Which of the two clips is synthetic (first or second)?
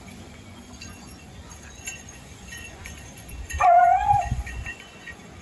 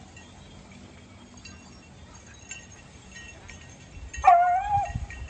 first